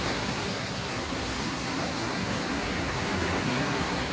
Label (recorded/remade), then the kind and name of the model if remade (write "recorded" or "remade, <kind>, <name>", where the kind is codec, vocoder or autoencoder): remade, codec, SNAC